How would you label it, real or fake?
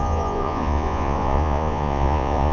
fake